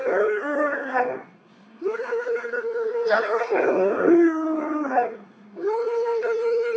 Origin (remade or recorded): remade